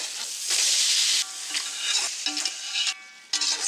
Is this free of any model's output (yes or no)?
yes